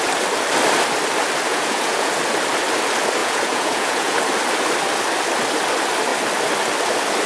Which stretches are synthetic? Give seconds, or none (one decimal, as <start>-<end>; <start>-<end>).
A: 1.5-2.1; 3.2-4.2